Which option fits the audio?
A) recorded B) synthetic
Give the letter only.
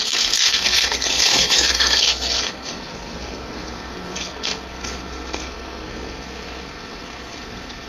B